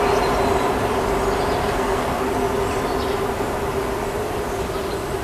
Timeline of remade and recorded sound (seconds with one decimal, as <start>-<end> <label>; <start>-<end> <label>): 0.0-1.6 recorded; 1.6-2.2 remade; 2.2-5.2 recorded